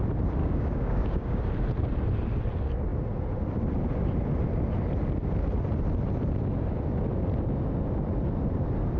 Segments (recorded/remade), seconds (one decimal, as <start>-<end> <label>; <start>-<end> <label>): 0.0-0.4 recorded; 0.4-1.4 remade; 1.4-9.0 recorded